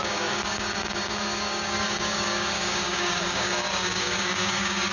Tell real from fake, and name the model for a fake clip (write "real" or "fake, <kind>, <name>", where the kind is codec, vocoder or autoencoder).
fake, codec, DAC